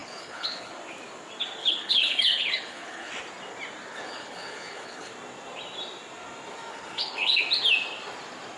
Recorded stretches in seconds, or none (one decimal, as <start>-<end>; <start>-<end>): 0.7-1.6; 3.1-3.9; 5.1-6.7; 7.4-8.6